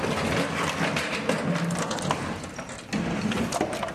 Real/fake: real